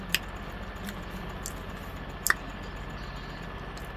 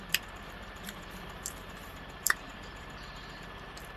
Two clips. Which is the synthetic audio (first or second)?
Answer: second